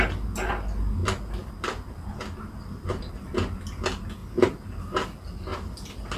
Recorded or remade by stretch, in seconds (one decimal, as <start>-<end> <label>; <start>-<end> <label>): 0.0-6.2 recorded